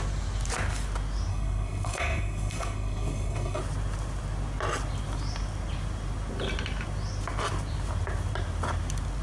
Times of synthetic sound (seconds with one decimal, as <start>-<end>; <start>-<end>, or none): 1.3-3.6